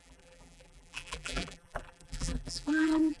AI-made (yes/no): yes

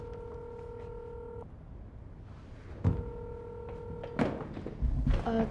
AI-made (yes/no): no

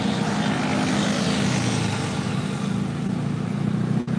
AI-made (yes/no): no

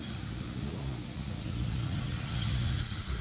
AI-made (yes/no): yes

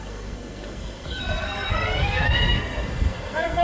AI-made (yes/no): yes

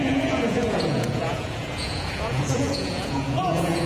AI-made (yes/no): yes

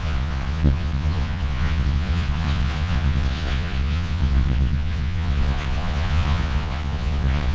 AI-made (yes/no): yes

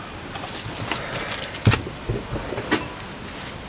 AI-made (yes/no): no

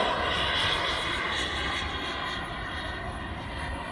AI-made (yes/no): no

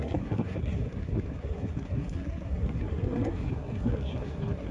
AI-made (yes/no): yes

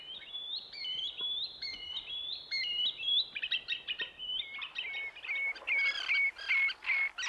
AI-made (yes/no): no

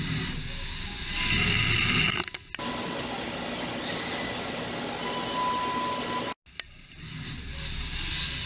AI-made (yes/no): no